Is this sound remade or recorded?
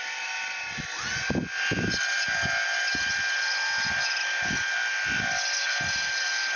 recorded